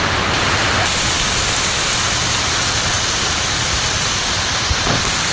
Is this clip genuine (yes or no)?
yes